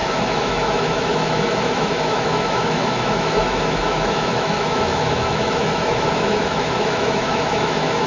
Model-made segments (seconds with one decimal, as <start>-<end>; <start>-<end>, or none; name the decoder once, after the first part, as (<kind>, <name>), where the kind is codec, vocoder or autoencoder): 0.0-8.1 (autoencoder, DAC-VAE)